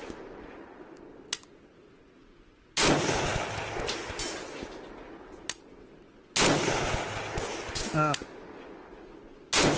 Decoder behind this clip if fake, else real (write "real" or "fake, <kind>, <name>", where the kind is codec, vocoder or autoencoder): real